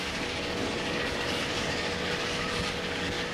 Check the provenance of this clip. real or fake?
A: fake